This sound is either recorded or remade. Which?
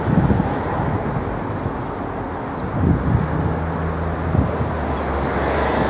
recorded